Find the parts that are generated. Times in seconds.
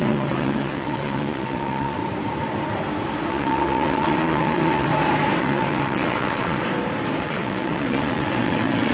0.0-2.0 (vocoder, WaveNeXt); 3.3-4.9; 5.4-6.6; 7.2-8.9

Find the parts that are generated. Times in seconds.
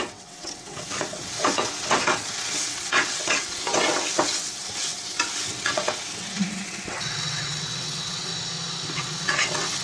0.0-8.3 (vocoder, WaveNeXt); 8.9-9.8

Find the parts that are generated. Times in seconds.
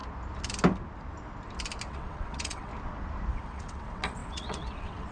1.9-2.7 (vocoder, WaveNeXt); 3.3-5.1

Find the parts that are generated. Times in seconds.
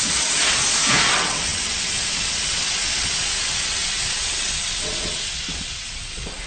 0.0-0.4 (vocoder, WaveNeXt); 1.1-6.5